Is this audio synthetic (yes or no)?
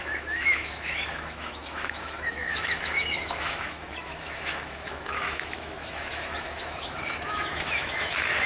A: yes